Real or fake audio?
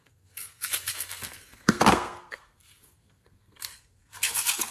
fake